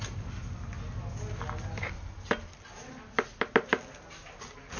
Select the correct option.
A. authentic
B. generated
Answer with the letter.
A